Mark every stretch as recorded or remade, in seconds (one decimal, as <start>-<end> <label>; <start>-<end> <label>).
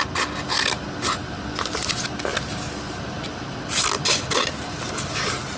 0.0-5.6 recorded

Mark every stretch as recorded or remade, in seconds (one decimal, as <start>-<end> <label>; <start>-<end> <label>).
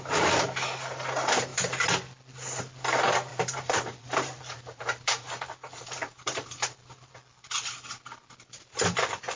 0.0-3.3 recorded; 3.3-7.1 remade; 7.1-9.4 recorded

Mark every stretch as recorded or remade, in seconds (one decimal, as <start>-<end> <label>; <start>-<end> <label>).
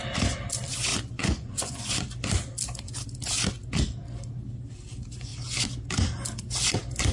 0.0-0.9 recorded; 0.9-1.9 remade; 1.9-7.1 recorded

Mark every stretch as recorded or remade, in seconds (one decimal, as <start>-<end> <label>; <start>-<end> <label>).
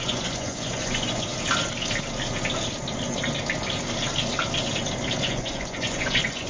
0.0-1.3 remade; 1.3-5.2 recorded; 5.2-6.5 remade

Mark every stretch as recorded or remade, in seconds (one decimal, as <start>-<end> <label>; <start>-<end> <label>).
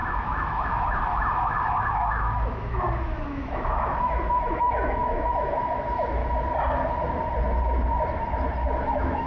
0.0-6.2 remade; 6.2-8.9 recorded; 8.9-9.3 remade